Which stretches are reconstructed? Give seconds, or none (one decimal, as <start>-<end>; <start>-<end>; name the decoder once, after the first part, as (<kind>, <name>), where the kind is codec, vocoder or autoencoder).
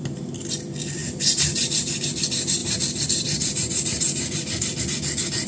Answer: 1.0-2.0 (vocoder, BigVGAN v2); 2.6-4.8